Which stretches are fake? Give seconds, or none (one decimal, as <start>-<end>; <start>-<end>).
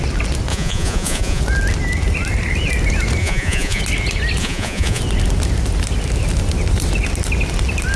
0.5-1.4; 3.2-3.8; 4.4-5.0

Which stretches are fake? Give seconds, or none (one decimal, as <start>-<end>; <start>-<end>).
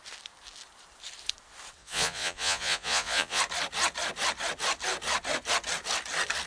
1.8-3.4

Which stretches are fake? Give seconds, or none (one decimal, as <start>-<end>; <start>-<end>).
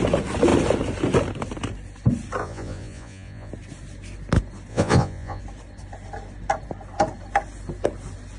2.4-3.5; 4.7-5.4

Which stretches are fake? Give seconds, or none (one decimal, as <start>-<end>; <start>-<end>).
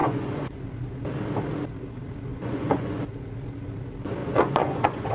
0.0-0.6; 2.3-3.0; 4.2-5.1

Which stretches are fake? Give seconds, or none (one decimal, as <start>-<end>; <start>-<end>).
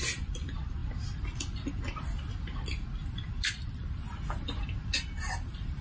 none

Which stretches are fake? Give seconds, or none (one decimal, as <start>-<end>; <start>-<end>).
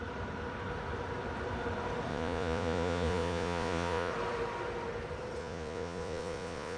2.1-4.1; 5.4-6.8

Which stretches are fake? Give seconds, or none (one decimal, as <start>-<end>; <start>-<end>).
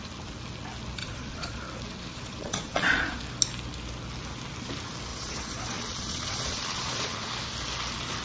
1.0-1.6; 2.1-3.2; 5.1-7.3